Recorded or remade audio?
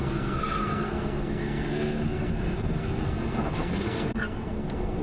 remade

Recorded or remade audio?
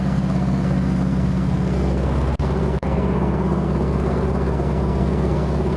remade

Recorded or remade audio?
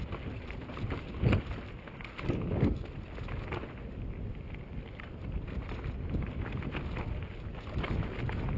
recorded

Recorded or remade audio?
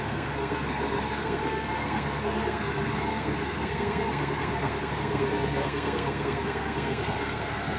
remade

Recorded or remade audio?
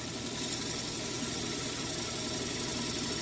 recorded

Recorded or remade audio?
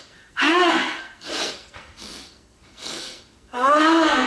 remade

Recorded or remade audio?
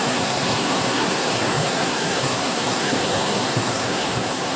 remade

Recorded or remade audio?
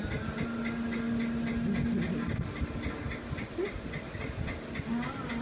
recorded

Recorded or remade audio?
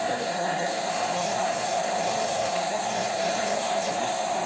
remade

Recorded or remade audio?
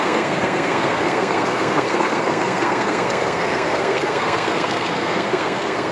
remade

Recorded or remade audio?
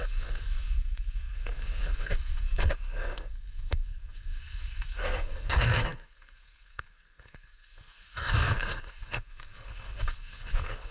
remade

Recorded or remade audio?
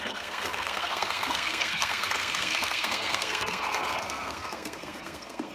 remade